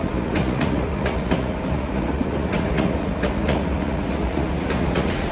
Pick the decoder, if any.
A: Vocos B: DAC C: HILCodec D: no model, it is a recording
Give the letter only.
A